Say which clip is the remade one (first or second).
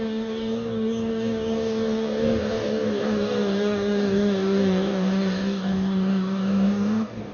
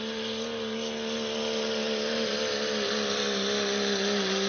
first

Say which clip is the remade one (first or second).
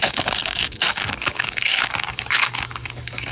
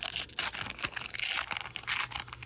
first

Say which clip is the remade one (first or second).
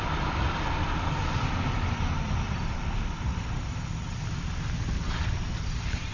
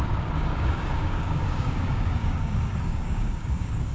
second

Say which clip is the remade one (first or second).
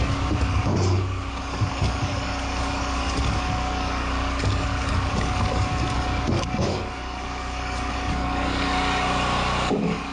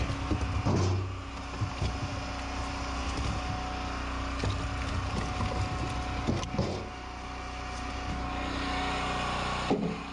first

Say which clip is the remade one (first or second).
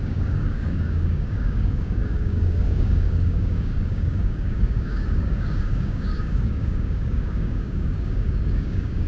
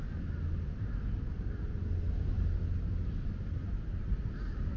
first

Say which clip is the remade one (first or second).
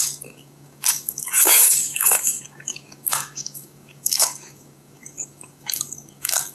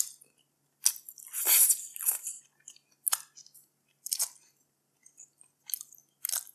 first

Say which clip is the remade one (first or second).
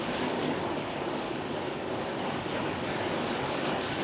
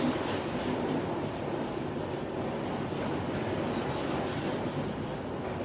first